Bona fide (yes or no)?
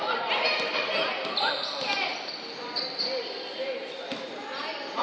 no